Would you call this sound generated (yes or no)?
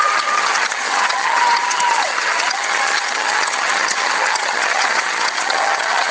yes